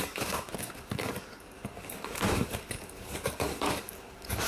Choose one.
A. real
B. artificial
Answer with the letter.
B